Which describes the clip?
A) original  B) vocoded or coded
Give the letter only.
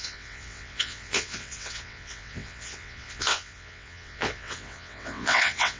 B